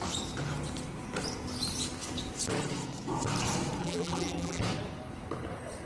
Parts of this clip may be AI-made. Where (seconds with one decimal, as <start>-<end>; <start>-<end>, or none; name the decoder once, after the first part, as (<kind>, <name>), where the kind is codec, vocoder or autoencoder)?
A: 3.8-4.6 (vocoder, BigVGAN v2)